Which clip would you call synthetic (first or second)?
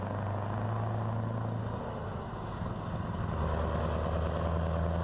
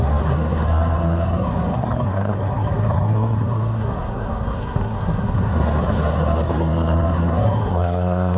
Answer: second